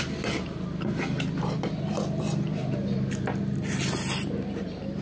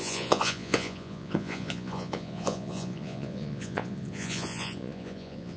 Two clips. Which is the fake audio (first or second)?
second